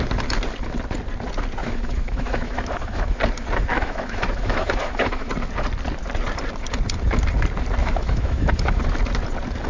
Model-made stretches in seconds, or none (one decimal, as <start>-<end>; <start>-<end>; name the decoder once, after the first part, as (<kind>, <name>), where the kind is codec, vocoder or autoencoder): 1.6-3.2 (autoencoder, DAC-VAE); 3.7-5.3; 7.8-8.8